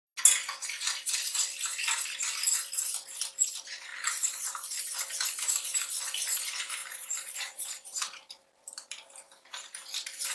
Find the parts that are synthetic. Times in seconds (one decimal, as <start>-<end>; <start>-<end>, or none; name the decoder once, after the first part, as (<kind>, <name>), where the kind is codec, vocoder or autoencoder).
3.9-4.8 (vocoder, BigVGAN v2); 6.8-10.3